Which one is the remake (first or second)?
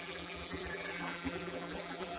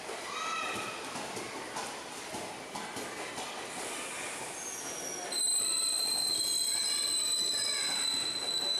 first